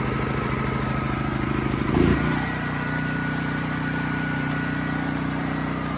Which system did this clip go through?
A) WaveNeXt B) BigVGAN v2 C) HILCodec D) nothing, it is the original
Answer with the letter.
B